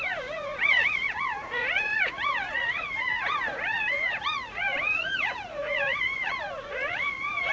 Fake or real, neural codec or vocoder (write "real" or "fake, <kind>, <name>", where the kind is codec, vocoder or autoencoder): fake, vocoder, Vocos